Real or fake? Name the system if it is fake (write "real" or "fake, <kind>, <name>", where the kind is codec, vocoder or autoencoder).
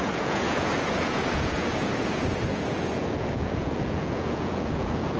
fake, vocoder, Vocos